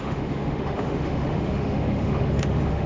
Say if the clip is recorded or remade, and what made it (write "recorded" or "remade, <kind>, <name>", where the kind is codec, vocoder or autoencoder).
remade, autoencoder, DAC-VAE